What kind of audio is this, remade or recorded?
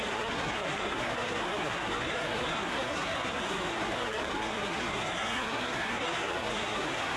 remade